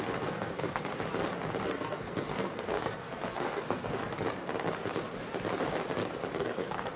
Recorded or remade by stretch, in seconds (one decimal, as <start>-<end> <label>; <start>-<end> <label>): 0.0-0.9 remade; 0.9-1.6 recorded; 1.6-4.0 remade; 4.0-6.4 recorded; 6.4-7.0 remade